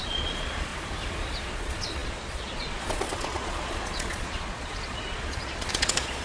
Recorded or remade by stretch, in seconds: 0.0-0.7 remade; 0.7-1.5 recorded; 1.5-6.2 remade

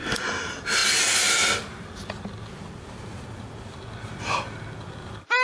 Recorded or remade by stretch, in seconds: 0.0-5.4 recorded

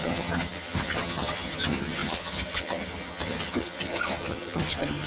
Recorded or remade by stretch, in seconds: 0.0-5.1 remade